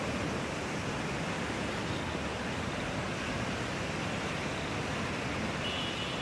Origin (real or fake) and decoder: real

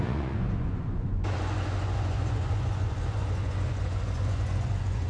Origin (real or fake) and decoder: fake, vocoder, Vocos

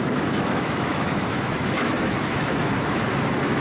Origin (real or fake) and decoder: fake, autoencoder, DAC-VAE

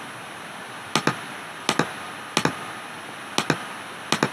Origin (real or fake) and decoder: real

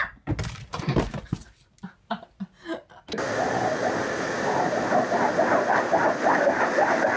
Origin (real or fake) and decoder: real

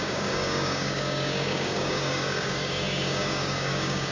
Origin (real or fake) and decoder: fake, codec, DAC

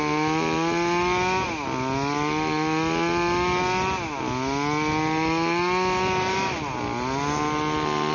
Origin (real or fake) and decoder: real